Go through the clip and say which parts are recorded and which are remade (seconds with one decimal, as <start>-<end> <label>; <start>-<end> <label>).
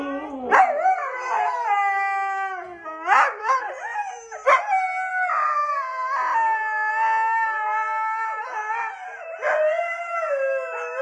0.0-11.0 recorded